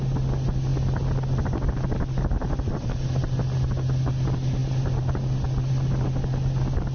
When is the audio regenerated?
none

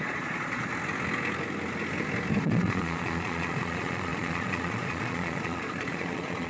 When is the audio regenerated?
0.0-0.7 (vocoder, Vocos); 2.4-6.5